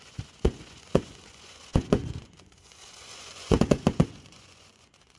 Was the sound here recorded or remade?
remade